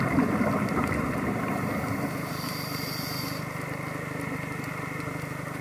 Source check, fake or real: real